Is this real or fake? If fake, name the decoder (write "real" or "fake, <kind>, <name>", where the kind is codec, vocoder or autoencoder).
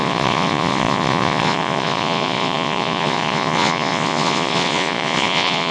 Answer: fake, vocoder, Vocos